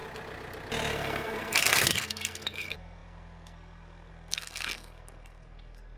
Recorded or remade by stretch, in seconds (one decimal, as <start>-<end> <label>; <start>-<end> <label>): 0.0-0.9 recorded; 0.9-6.0 remade